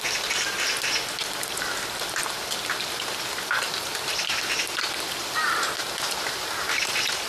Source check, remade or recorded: recorded